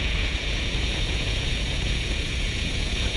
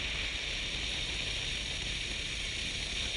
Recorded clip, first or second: second